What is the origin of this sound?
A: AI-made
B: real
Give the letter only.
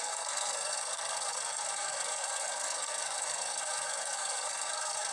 A